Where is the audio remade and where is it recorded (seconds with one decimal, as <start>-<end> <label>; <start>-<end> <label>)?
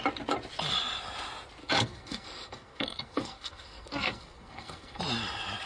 0.0-1.6 recorded; 1.6-5.0 remade; 5.0-5.7 recorded